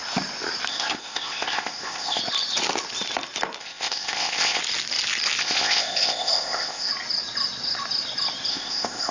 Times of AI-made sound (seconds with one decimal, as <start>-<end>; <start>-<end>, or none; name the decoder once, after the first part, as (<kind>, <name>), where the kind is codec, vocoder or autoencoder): 0.7-2.2 (codec, ZipCodec); 3.6-4.6; 5.4-6.9; 8.5-9.1